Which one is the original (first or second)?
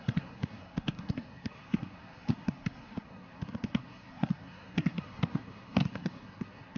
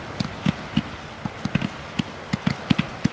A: second